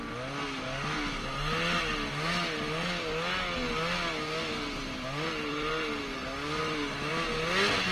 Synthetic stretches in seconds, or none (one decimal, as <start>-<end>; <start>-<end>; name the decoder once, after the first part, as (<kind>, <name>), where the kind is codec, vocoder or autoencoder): none